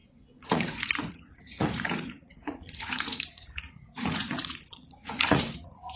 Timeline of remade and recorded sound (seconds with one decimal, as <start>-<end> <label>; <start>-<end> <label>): 0.0-6.0 remade